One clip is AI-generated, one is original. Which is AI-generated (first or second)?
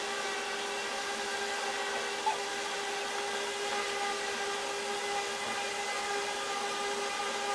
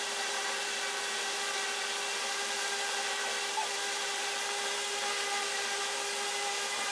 second